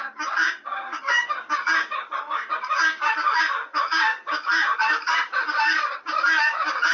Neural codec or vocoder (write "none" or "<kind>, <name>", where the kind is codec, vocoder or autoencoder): codec, DAC